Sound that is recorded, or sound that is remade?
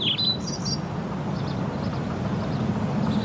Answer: recorded